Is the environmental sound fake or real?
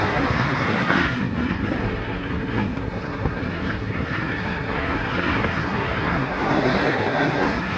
fake